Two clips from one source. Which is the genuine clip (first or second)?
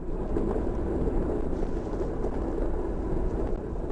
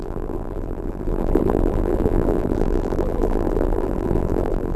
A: first